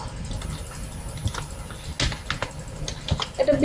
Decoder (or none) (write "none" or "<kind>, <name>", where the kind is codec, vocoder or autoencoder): none